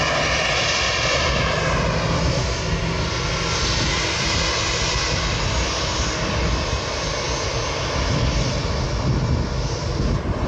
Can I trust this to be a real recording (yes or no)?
yes